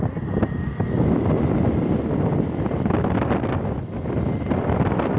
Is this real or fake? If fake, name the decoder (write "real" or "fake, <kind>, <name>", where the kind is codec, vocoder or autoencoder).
real